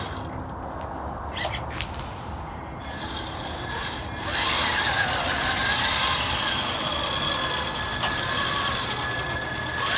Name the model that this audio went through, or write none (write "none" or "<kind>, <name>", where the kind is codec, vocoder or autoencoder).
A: none